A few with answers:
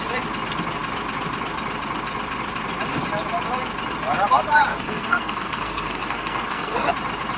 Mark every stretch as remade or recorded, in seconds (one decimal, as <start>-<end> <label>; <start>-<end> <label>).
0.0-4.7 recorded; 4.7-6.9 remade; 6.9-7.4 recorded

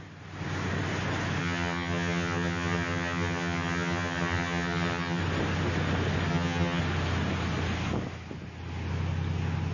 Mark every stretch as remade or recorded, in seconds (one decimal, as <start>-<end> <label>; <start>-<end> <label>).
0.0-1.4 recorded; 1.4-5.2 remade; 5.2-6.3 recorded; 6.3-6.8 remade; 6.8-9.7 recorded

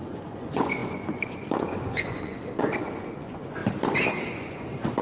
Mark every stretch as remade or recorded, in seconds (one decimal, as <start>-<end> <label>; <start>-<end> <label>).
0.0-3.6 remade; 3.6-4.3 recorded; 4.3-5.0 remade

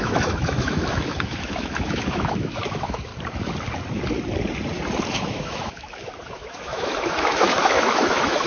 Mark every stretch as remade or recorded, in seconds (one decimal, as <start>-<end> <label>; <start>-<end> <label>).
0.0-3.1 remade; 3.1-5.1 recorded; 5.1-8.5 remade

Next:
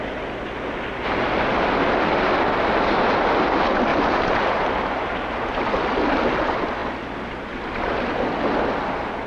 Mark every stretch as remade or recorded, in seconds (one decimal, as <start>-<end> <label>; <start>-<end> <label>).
0.0-3.9 recorded; 3.9-5.7 remade; 5.7-9.3 recorded